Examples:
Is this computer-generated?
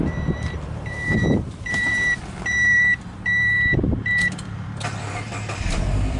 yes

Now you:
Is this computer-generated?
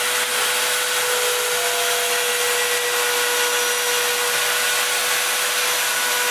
no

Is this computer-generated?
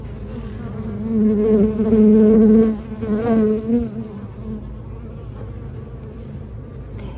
no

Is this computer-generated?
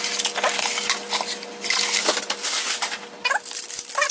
no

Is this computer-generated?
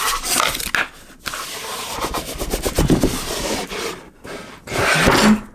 no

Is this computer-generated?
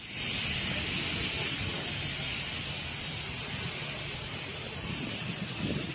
no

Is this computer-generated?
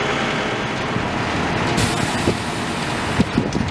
no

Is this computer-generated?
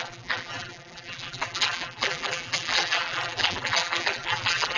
yes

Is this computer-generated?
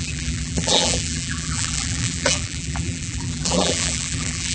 yes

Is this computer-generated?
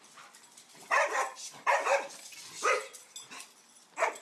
yes